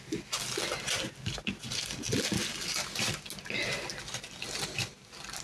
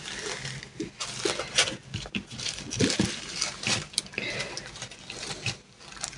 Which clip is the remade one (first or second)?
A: second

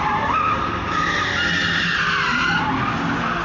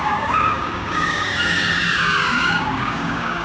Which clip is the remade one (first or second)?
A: second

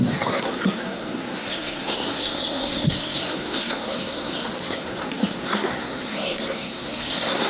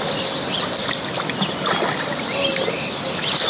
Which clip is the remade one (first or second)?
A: first